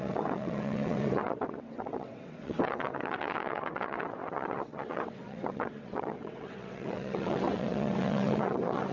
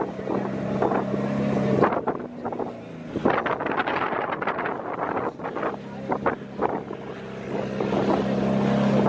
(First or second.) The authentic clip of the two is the second